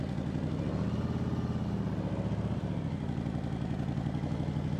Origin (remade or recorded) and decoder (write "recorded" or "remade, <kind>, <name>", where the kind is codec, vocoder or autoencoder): recorded